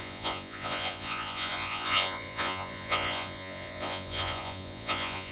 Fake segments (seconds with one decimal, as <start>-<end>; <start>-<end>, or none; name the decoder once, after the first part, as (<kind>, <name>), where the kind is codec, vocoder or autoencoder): 0.0-5.3 (vocoder, Vocos)